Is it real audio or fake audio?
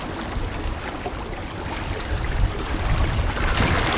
real